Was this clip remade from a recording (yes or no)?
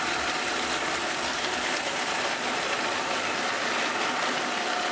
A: yes